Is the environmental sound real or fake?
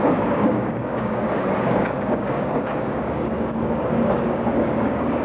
fake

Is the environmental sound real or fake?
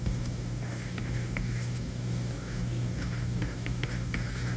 fake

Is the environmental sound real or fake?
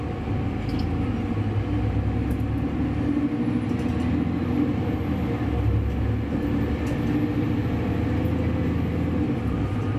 real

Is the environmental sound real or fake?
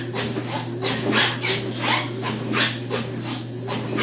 real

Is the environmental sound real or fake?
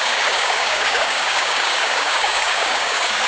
fake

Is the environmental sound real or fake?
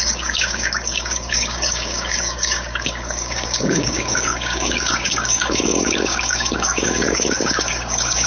fake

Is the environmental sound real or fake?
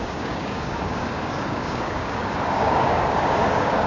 fake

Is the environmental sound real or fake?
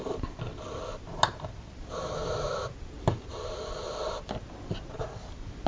real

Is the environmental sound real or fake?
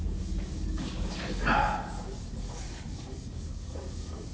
fake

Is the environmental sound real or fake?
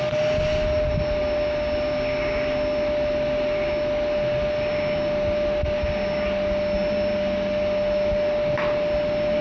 real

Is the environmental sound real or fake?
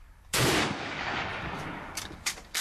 fake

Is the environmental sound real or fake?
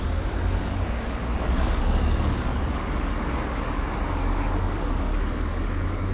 fake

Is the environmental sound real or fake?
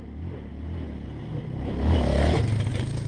real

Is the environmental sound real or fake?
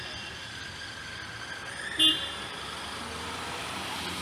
real